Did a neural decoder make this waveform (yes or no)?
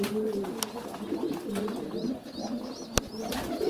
no